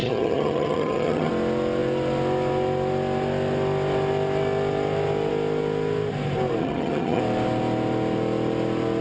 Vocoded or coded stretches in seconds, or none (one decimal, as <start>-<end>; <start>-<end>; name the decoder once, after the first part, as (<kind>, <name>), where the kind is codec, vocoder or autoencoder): 0.0-1.3 (vocoder, HiFi-GAN); 6.6-7.2